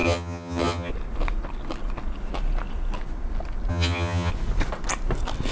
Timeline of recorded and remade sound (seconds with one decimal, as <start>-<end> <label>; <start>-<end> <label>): 0.0-0.9 remade; 0.9-3.7 recorded; 3.7-4.3 remade; 4.3-5.5 recorded